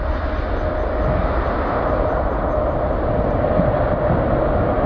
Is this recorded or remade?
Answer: recorded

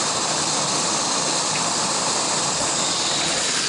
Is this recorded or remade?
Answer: recorded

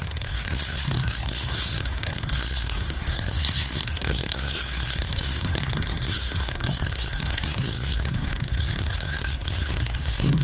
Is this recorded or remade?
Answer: remade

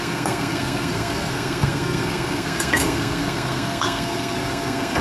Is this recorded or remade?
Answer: remade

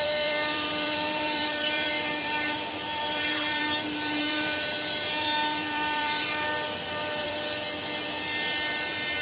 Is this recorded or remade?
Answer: remade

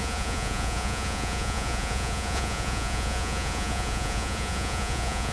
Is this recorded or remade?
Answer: remade